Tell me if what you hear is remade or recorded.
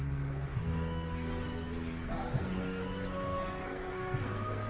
remade